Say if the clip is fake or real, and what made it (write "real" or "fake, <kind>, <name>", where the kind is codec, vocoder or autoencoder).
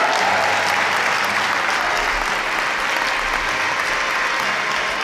real